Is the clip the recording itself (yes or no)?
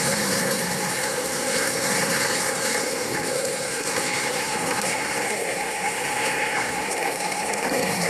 no